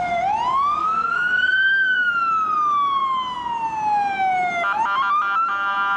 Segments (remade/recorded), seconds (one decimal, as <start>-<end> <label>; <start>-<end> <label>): 0.0-0.8 recorded; 0.8-2.1 remade; 2.1-6.0 recorded